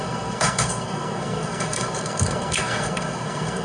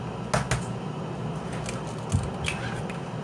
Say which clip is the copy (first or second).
first